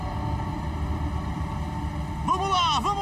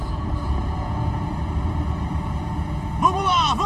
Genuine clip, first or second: first